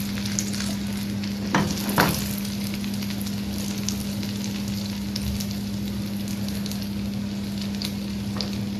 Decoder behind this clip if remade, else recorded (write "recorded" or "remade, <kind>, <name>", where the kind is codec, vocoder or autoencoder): recorded